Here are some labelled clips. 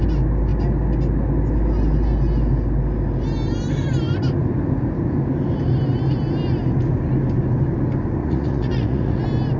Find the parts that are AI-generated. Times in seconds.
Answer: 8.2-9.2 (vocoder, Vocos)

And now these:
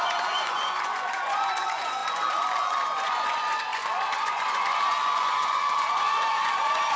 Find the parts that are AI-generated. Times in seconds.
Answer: 0.0-7.0 (vocoder, Vocos)